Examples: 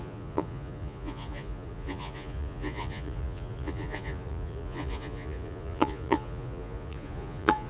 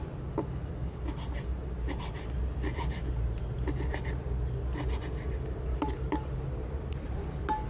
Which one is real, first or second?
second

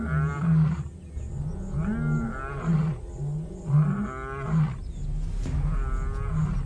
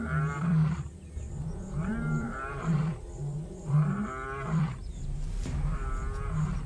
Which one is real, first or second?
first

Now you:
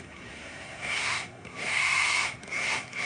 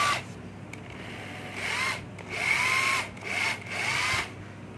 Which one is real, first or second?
second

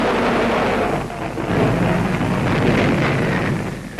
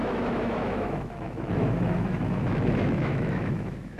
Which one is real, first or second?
first